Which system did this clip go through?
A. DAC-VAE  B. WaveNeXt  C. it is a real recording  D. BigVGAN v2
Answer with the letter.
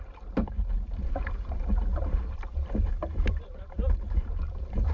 D